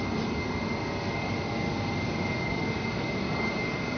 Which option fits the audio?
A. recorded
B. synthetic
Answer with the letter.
A